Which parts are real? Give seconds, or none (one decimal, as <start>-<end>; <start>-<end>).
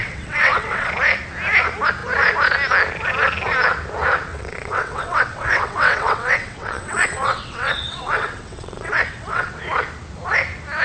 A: 0.9-4.3; 9.5-10.8